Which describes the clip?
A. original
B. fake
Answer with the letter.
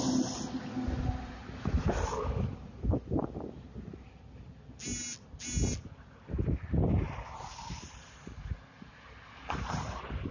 A